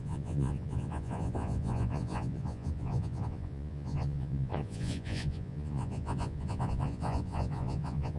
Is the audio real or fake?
fake